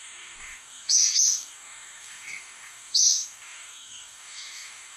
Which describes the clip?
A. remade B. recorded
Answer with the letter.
A